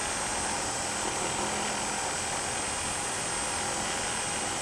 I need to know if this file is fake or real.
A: real